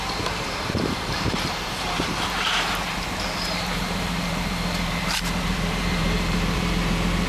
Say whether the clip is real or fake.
fake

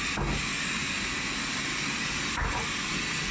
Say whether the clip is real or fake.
real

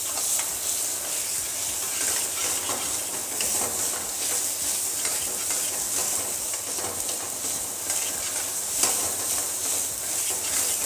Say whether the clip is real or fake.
real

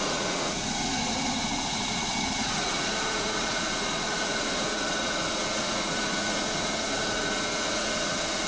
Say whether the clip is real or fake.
fake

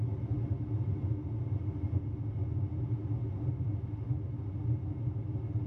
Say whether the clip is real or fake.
real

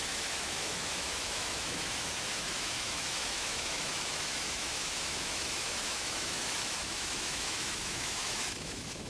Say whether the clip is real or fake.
fake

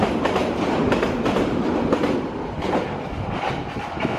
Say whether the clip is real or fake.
real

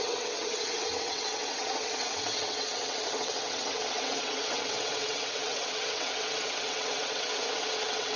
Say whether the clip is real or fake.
fake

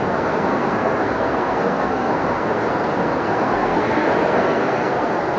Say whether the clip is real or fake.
fake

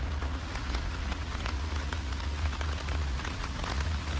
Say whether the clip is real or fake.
fake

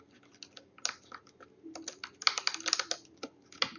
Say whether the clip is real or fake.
real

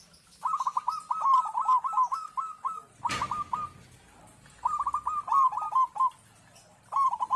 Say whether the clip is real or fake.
real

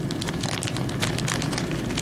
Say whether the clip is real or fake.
real